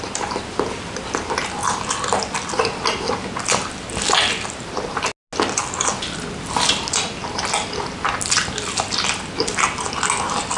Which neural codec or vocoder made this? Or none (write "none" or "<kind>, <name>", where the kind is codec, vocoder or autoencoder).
none